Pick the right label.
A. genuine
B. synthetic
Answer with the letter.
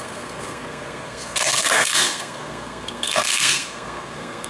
B